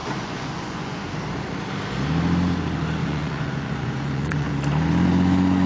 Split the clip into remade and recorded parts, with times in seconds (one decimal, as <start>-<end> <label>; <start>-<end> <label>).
0.0-1.0 remade; 1.0-3.0 recorded; 3.0-4.5 remade; 4.5-5.7 recorded